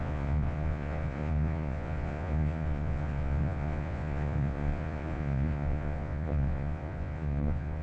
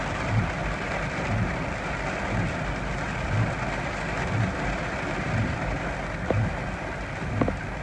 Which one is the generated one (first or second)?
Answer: first